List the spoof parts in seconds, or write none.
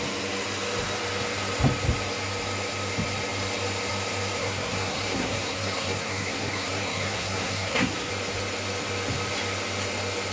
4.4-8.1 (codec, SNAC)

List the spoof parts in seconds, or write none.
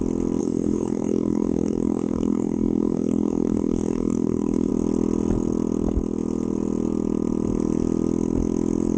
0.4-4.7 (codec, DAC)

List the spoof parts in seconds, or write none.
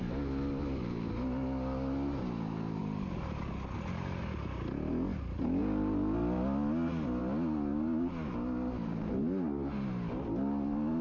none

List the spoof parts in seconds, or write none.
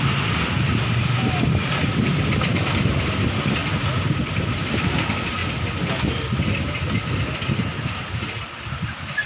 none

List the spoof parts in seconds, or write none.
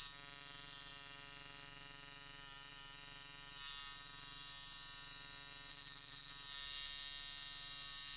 5.7-6.3 (autoencoder, DAC-VAE)